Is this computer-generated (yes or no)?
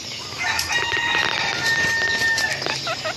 no